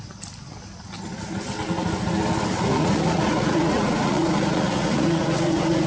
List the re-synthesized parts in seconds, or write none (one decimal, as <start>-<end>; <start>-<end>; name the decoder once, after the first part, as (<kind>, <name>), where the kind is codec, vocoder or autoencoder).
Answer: 2.7-5.9 (vocoder, Vocos)